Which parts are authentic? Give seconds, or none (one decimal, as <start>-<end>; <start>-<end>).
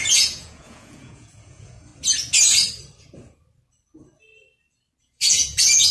1.9-5.0